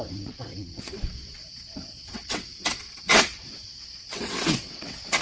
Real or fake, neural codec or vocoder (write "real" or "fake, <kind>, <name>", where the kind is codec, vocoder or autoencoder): fake, vocoder, WaveNeXt